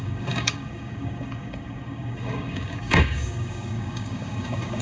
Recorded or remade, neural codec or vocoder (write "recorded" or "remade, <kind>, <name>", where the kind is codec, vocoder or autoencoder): remade, codec, DAC